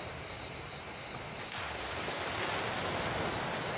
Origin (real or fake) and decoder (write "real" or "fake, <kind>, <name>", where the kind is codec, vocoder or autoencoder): real